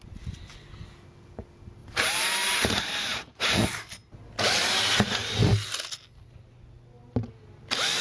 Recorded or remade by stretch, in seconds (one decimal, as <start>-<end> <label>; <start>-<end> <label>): 0.0-1.8 recorded; 1.8-3.4 remade; 3.4-8.0 recorded